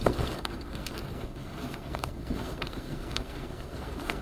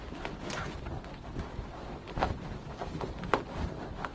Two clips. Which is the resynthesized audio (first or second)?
first